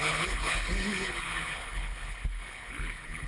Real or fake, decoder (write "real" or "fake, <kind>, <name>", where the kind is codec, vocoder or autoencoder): fake, codec, HILCodec